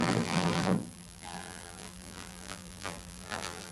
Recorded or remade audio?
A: remade